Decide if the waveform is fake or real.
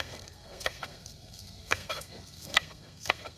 fake